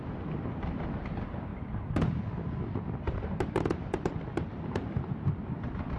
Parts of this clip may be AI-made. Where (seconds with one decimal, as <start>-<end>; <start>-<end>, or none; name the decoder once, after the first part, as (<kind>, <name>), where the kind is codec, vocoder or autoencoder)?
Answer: 1.5-5.1 (vocoder, BigVGAN v2)